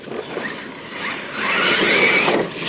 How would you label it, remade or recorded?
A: recorded